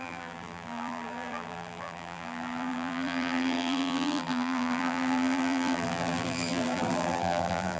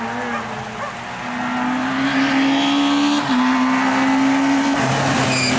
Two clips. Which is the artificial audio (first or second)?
first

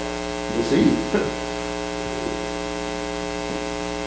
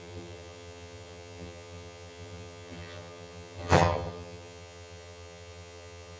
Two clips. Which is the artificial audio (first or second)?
second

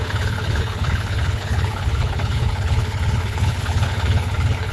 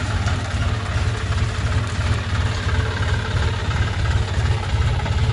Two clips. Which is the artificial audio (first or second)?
first